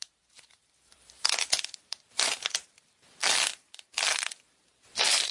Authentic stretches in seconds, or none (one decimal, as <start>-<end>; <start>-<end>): 3.2-4.3